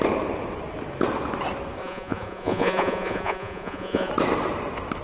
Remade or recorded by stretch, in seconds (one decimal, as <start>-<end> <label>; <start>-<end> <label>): 0.0-1.8 recorded; 1.8-4.1 remade; 4.1-5.0 recorded